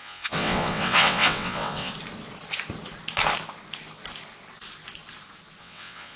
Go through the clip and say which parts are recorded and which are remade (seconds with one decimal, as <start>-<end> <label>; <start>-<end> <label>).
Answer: 0.0-1.9 remade; 1.9-5.6 recorded; 5.6-6.2 remade